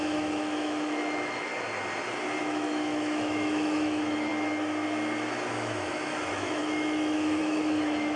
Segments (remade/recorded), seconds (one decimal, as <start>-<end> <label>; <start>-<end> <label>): 0.0-1.5 remade; 1.5-2.4 recorded; 2.4-4.3 remade; 4.3-5.5 recorded; 5.5-8.2 remade